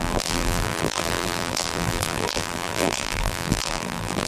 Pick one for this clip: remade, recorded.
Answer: remade